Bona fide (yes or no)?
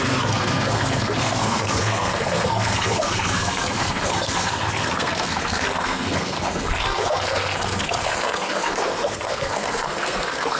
no